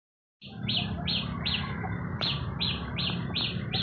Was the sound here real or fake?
real